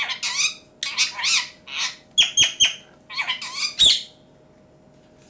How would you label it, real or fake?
real